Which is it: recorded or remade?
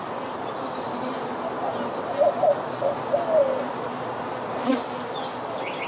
recorded